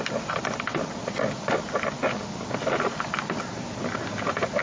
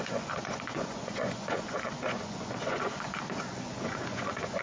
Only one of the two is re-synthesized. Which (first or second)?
second